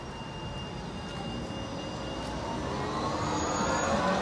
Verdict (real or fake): real